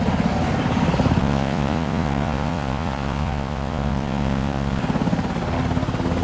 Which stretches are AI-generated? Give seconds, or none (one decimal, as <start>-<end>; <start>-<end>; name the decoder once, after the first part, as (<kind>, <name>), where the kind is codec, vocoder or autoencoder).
1.2-4.8 (vocoder, Vocos)